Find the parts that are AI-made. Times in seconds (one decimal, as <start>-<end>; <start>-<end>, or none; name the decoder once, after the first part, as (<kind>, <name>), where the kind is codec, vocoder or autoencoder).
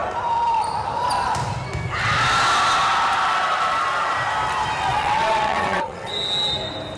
4.9-6.1 (vocoder, WaveNeXt)